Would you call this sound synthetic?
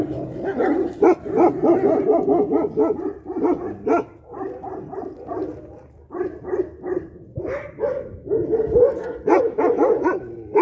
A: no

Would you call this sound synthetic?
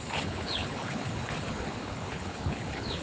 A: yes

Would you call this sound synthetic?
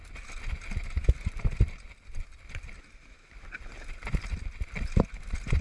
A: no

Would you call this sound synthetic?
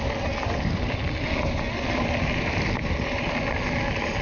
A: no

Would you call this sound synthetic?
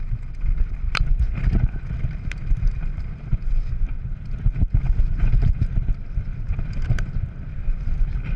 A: no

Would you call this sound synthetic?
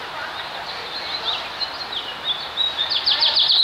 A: no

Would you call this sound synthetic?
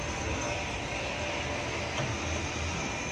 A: no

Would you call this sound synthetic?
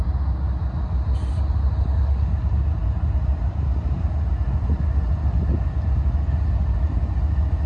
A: no